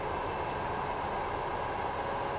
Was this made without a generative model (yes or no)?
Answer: yes